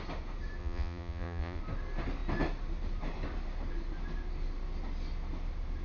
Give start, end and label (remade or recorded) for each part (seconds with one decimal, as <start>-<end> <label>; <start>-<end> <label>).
0.0-0.6 recorded; 0.6-1.6 remade; 1.6-5.8 recorded